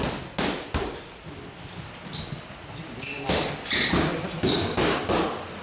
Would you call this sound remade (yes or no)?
no